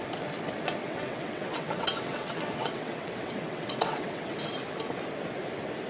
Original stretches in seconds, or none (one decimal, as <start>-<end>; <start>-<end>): 0.0-0.8; 4.3-5.9